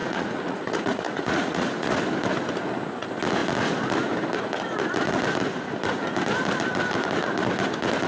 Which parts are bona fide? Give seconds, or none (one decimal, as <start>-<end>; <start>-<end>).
2.0-8.1